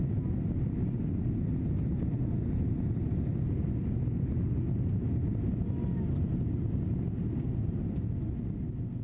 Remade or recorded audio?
recorded